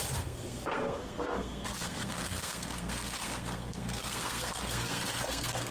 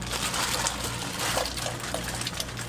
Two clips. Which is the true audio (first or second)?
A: second